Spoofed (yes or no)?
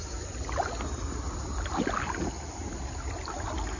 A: no